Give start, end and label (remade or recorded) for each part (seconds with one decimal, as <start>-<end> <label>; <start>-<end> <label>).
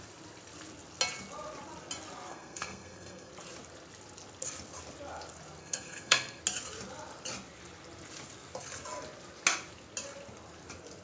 0.0-2.3 recorded; 2.3-3.3 remade; 3.3-5.6 recorded; 5.6-6.4 remade; 6.4-11.0 recorded